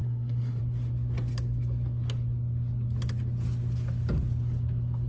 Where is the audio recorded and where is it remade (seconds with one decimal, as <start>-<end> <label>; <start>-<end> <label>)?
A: 0.0-0.6 remade; 0.6-5.1 recorded